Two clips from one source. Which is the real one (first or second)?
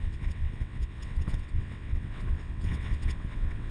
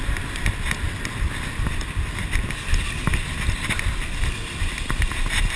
second